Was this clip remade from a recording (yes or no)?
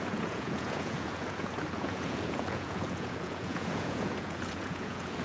yes